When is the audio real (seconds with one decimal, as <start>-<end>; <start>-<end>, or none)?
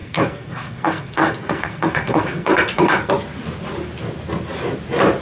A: 3.1-5.2